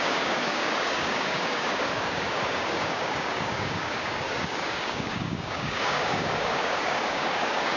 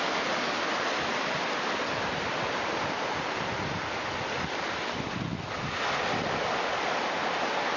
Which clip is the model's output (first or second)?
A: first